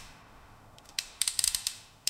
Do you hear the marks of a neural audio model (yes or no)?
yes